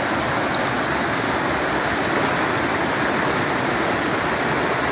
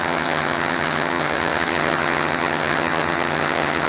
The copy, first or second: second